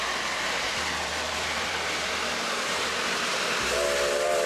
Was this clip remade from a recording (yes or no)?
yes